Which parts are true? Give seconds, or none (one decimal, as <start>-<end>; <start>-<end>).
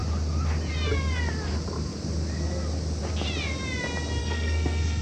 0.0-4.2